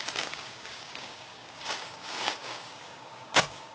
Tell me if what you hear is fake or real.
fake